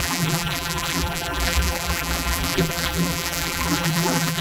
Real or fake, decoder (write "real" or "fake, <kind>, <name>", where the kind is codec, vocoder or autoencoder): fake, vocoder, BigVGAN v2